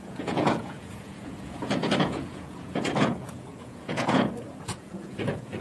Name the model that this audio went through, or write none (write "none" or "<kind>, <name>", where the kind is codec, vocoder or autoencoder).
vocoder, Vocos